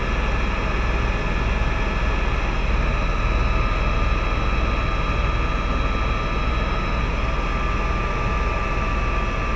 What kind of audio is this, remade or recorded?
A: recorded